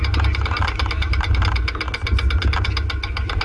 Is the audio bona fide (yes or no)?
yes